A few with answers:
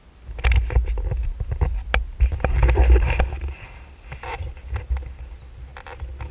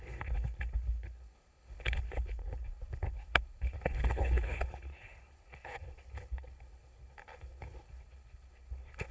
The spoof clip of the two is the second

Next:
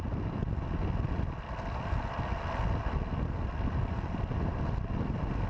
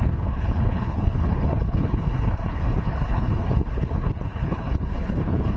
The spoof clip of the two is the second